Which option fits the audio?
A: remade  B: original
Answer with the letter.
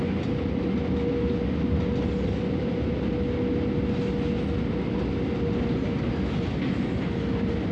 B